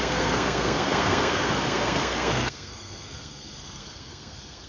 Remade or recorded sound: remade